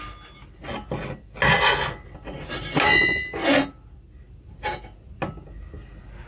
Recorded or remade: recorded